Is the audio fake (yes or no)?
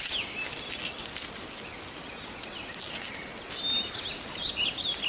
no